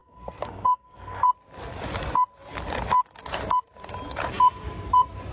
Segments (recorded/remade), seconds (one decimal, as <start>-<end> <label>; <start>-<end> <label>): 0.0-1.3 remade; 1.3-5.3 recorded